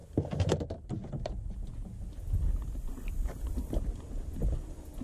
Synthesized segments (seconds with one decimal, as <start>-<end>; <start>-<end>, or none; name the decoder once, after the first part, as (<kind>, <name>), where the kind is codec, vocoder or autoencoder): none